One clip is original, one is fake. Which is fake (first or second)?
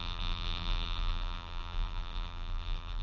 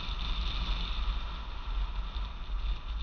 first